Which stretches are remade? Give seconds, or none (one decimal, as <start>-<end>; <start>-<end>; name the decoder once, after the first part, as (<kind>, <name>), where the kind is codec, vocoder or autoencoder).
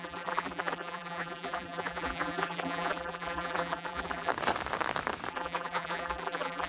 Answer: 0.0-4.3 (vocoder, BigVGAN v2); 5.3-6.7